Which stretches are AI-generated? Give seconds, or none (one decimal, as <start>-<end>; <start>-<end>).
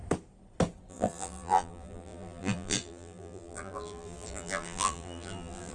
0.9-5.7